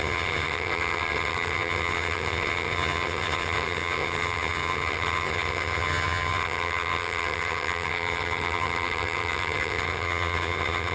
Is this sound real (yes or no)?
no